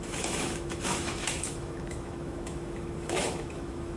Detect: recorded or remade remade